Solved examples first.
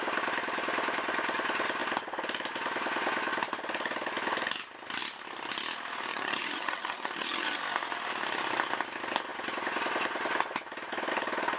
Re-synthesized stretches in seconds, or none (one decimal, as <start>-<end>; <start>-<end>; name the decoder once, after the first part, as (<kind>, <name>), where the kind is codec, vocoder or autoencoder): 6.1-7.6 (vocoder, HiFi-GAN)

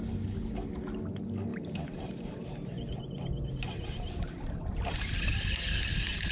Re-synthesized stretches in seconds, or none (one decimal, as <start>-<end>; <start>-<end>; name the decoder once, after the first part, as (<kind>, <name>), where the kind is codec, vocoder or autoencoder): 1.5-4.9 (vocoder, BigVGAN v2)

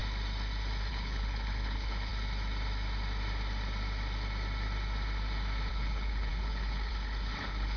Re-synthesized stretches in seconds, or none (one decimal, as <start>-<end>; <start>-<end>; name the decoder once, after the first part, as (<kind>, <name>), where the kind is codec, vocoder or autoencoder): 0.9-2.1 (codec, HILCodec); 5.7-7.8